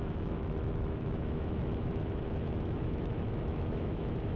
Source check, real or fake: fake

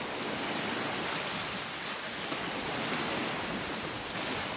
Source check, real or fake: real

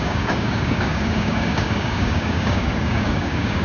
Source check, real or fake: fake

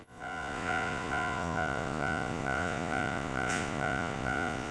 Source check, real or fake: fake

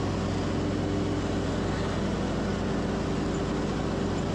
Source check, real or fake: real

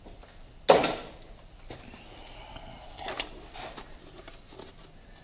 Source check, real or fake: real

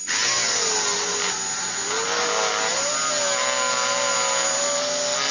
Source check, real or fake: real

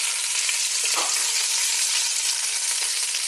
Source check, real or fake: real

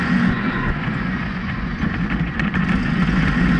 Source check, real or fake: fake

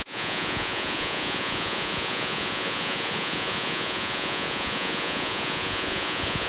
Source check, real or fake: fake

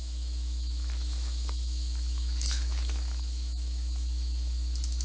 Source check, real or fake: fake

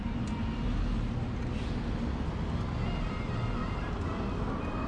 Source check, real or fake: real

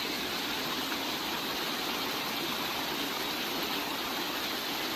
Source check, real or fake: real